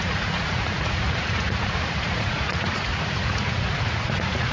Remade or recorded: remade